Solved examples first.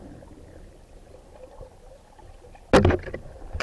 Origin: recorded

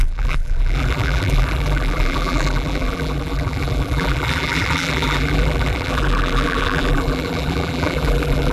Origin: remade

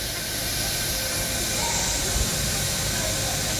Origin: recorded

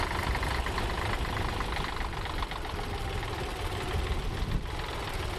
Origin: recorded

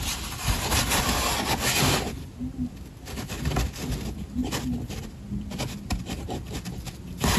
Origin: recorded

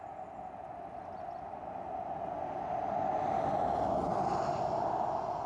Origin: recorded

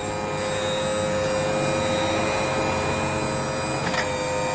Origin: recorded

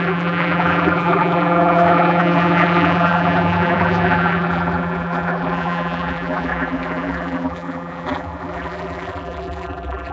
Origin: remade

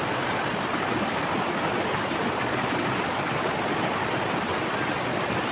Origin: recorded